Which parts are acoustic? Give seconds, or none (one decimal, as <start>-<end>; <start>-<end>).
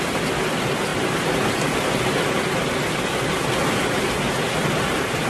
0.0-5.3